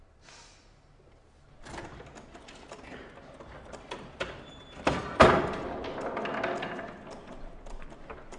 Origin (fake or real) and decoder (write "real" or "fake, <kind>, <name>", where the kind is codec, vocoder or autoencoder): real